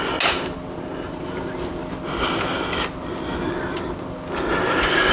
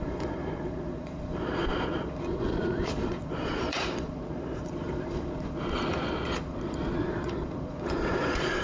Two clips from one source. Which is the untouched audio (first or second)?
first